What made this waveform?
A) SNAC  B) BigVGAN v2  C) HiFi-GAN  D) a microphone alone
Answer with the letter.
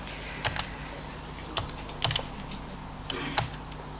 D